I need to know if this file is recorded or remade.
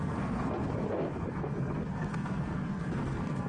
remade